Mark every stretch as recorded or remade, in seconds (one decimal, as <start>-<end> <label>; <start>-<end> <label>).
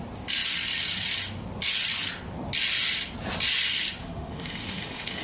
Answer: 0.0-4.0 recorded; 4.0-5.2 remade